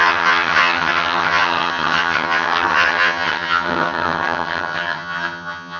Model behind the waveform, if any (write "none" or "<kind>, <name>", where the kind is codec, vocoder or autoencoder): vocoder, HiFi-GAN